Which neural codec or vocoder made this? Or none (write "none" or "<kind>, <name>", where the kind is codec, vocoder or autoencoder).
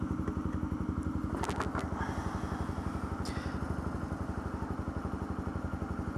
none